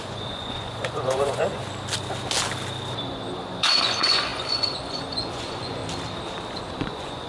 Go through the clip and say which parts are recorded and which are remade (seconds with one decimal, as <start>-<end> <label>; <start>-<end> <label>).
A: 0.0-1.6 remade; 1.6-3.0 recorded; 3.0-5.8 remade; 5.8-6.6 recorded; 6.6-7.3 remade